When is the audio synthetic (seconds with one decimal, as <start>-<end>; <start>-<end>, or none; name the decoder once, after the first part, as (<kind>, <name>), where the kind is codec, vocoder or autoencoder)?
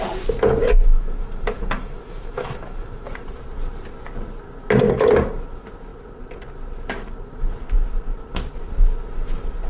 0.9-3.1 (autoencoder, DAC-VAE)